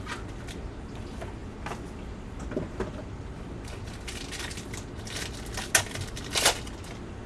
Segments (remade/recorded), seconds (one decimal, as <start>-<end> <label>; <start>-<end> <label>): 0.0-7.3 recorded